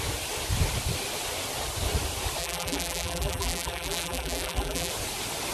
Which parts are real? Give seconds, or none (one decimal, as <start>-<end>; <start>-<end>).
0.0-2.4; 4.9-5.5